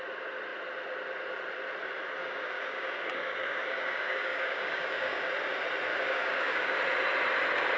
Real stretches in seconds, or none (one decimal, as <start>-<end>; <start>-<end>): 0.0-2.2; 5.3-5.9; 6.8-7.8